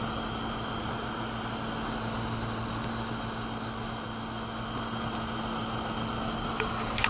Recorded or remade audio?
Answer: recorded